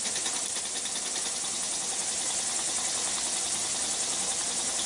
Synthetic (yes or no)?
no